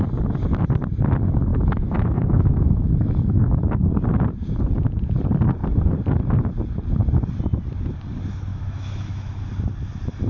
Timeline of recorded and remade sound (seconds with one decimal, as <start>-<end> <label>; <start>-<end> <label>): 0.0-1.5 recorded; 1.5-3.9 remade; 3.9-8.5 recorded; 8.5-9.4 remade; 9.4-10.3 recorded